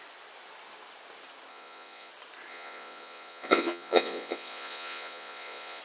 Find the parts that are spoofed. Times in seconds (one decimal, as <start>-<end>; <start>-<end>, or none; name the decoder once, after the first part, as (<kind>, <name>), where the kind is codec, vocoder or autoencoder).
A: 1.5-2.1 (vocoder, Vocos); 2.5-5.8